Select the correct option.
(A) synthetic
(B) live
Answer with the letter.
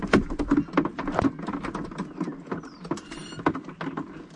B